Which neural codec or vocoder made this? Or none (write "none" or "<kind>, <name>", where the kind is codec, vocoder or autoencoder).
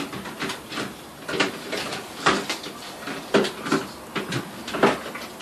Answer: none